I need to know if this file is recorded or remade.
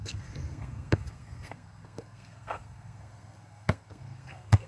remade